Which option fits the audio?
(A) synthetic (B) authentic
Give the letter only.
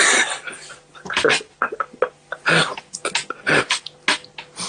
B